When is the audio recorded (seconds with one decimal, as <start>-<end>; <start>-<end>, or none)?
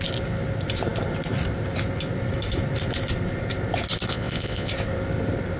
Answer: 0.0-4.1; 4.7-5.6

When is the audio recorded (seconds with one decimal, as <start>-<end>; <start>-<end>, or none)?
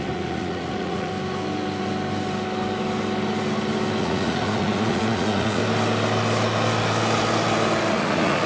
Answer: 1.1-4.0; 5.6-7.9